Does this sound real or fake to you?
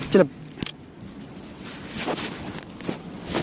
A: real